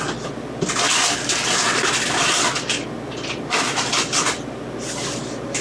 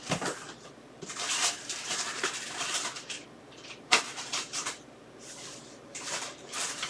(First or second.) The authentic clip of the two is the first